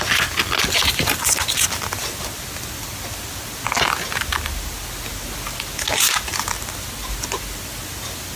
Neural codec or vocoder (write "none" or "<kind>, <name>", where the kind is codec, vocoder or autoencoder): none